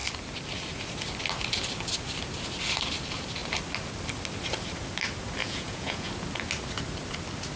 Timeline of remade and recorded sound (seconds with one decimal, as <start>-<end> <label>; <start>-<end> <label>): 0.0-5.4 recorded; 5.4-6.1 remade; 6.1-7.6 recorded

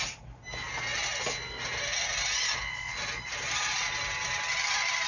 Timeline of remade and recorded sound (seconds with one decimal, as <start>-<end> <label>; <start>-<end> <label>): 0.0-5.1 recorded

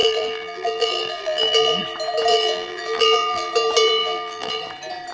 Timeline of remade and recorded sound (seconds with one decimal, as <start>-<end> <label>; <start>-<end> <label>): 0.0-1.8 remade; 1.8-2.3 recorded; 2.3-3.5 remade; 3.5-4.0 recorded; 4.0-4.6 remade; 4.6-5.1 recorded

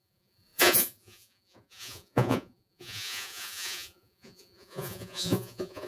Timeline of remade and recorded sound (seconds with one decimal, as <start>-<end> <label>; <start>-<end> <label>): 0.0-5.9 remade

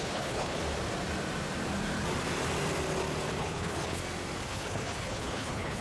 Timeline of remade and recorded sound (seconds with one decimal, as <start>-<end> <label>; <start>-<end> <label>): 0.0-0.6 remade; 0.6-3.4 recorded; 3.4-4.0 remade; 4.0-4.5 recorded; 4.5-5.8 remade

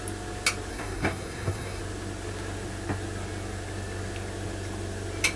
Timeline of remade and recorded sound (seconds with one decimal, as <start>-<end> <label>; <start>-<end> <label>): 0.0-0.7 recorded; 0.7-1.8 remade; 1.8-5.4 recorded